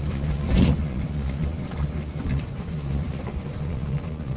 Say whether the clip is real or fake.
fake